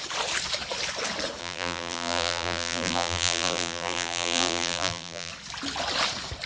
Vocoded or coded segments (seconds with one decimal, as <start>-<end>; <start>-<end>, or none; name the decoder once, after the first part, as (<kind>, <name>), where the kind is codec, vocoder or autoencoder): 1.4-5.3 (vocoder, BigVGAN v2)